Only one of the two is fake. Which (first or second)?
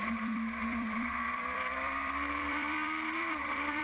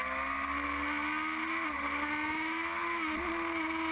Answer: first